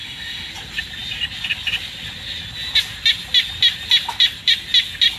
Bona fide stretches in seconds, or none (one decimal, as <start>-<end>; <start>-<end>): 0.5-5.2